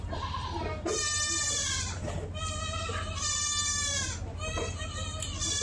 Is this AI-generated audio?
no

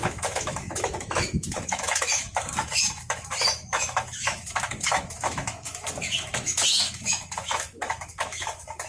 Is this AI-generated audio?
yes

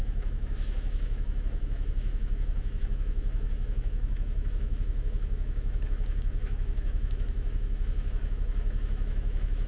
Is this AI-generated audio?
yes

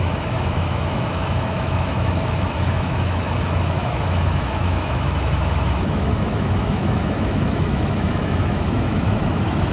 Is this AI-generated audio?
yes